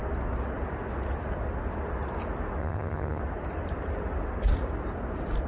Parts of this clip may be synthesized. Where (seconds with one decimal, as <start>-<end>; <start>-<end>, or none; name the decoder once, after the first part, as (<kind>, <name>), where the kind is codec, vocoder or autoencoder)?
2.6-3.2 (vocoder, HiFi-GAN)

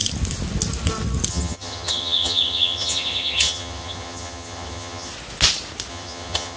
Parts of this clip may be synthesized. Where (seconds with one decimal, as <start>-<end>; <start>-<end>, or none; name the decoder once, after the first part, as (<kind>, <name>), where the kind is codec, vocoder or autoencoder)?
1.3-5.1 (vocoder, HiFi-GAN); 5.9-6.6

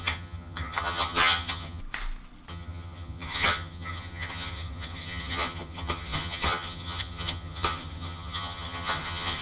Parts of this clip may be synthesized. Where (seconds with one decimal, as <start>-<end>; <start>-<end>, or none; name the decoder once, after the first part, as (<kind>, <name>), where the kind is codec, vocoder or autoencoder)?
0.0-1.8 (vocoder, HiFi-GAN); 2.5-9.4

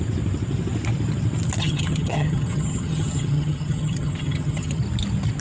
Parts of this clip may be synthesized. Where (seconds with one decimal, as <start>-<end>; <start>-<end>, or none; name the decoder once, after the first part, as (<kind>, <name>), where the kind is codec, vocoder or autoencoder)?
1.6-4.8 (vocoder, HiFi-GAN)